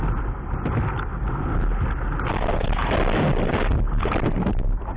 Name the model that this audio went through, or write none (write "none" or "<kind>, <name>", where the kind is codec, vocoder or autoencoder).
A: vocoder, BigVGAN v2